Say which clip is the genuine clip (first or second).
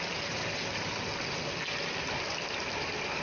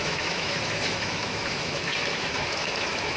first